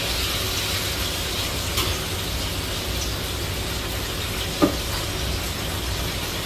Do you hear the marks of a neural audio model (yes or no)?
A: no